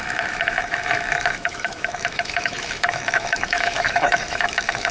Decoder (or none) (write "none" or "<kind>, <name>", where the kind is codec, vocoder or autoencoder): autoencoder, DAC-VAE